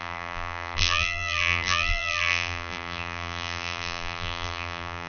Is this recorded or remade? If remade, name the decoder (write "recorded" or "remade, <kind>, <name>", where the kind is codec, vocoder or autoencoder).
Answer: remade, vocoder, BigVGAN v2